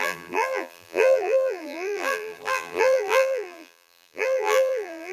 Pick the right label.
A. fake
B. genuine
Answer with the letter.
A